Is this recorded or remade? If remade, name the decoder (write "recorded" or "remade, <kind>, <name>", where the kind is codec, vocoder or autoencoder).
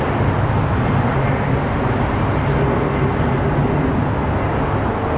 recorded